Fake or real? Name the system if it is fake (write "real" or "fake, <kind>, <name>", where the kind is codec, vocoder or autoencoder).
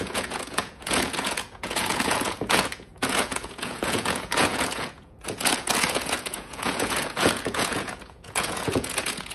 fake, vocoder, Vocos